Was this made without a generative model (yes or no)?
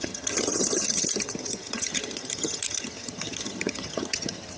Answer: no